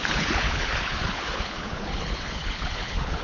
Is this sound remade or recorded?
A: remade